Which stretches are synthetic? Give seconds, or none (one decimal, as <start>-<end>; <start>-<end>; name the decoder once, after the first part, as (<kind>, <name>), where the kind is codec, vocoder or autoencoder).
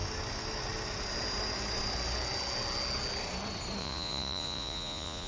3.8-5.3 (vocoder, Vocos)